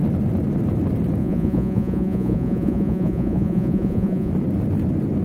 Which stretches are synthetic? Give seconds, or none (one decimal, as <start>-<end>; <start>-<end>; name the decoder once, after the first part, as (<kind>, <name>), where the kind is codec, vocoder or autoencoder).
1.2-4.3 (vocoder, Vocos)